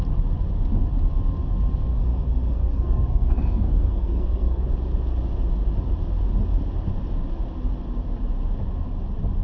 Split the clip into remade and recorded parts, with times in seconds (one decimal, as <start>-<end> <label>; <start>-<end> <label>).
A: 0.0-1.9 recorded; 1.9-4.6 remade; 4.6-9.4 recorded